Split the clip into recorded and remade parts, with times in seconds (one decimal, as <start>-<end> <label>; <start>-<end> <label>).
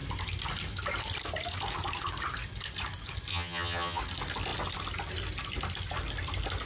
0.0-3.3 recorded; 3.3-4.0 remade; 4.0-6.7 recorded